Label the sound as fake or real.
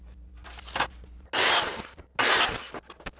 real